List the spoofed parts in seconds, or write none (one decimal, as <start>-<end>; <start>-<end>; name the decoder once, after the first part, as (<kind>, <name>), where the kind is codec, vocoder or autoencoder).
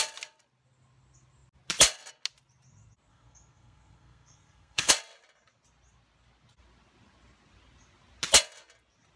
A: 3.1-4.9 (codec, SNAC)